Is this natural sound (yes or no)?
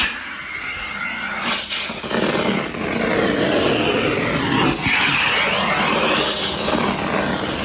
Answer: yes